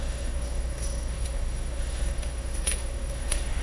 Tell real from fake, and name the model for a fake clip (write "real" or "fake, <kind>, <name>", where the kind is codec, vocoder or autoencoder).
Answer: fake, autoencoder, DAC-VAE